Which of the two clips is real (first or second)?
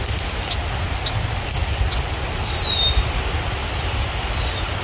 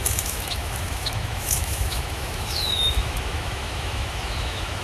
first